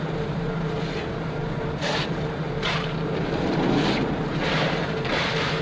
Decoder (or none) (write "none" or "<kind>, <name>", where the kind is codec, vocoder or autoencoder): vocoder, BigVGAN v2